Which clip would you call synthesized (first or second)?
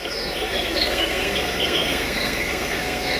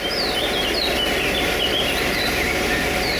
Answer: first